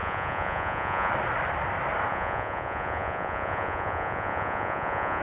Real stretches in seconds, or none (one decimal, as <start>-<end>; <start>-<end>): 1.1-2.1